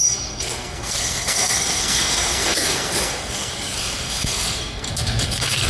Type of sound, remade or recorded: remade